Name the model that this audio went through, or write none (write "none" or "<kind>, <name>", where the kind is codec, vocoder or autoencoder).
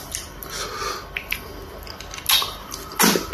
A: none